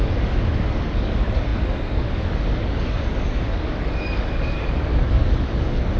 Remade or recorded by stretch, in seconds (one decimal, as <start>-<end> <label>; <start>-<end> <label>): 0.0-6.0 remade